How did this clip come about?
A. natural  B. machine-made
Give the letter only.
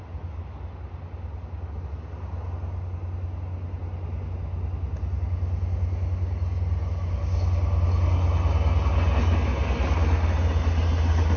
A